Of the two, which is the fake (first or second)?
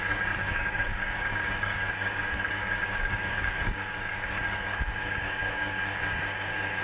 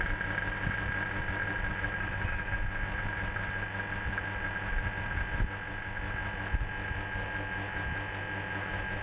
first